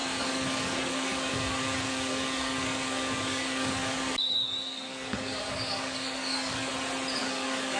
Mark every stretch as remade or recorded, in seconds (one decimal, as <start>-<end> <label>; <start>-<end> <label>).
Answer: 0.0-6.7 remade; 6.7-7.2 recorded; 7.2-7.8 remade